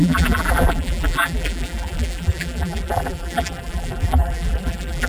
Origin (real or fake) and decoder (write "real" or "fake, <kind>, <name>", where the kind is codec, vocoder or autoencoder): fake, vocoder, BigVGAN v2